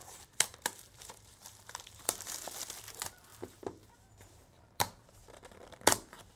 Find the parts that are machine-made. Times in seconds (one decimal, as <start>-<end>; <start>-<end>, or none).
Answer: 0.0-2.4; 3.3-5.1